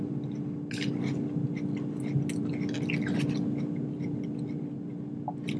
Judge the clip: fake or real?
real